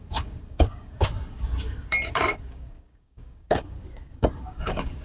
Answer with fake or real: fake